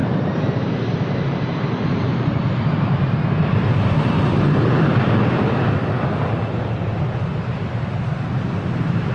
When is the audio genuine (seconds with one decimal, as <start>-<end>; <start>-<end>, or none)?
4.4-7.3